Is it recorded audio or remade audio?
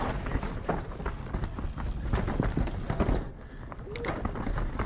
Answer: recorded